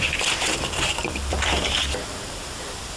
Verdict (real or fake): fake